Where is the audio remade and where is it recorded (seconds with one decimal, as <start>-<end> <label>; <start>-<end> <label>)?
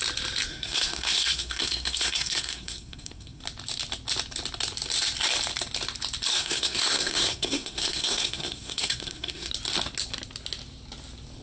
0.0-0.5 recorded; 0.5-3.4 remade; 3.4-6.3 recorded; 6.3-9.5 remade; 9.5-11.4 recorded